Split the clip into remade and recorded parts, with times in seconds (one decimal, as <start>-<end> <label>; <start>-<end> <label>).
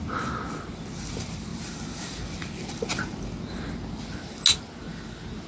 0.0-5.5 recorded